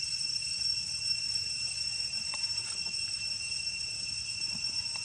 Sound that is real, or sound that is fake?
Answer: fake